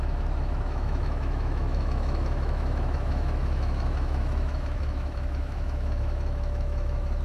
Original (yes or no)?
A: no